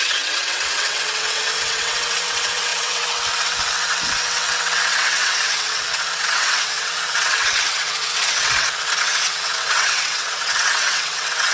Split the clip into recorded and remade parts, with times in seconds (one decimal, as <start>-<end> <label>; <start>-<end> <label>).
0.0-11.5 remade